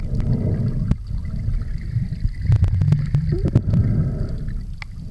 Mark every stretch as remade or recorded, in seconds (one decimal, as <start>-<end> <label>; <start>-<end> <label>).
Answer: 0.0-5.1 recorded